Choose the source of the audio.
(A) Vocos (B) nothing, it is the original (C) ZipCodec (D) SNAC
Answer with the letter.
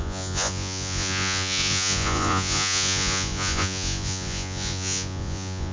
A